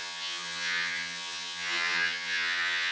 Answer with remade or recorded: remade